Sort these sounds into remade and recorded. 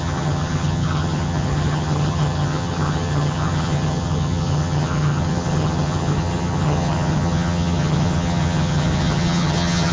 remade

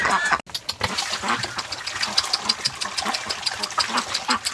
recorded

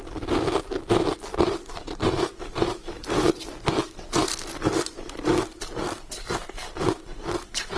recorded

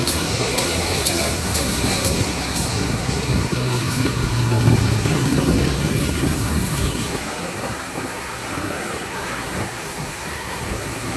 remade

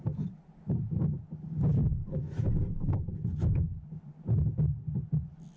recorded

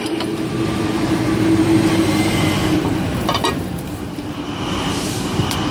remade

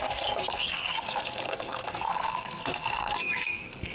remade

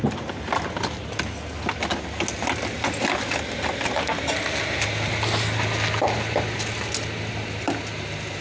recorded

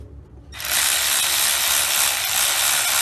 recorded